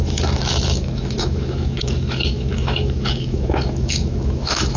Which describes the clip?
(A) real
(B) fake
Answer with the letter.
B